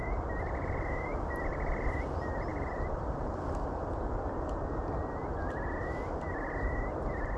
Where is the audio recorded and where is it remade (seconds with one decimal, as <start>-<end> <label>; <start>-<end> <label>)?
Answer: 0.0-7.4 recorded